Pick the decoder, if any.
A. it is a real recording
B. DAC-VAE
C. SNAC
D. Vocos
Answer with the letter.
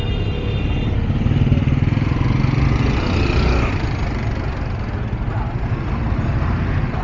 A